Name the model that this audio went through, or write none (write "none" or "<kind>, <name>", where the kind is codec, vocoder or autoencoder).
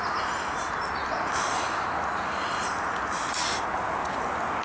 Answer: none